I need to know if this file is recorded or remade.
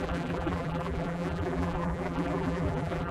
remade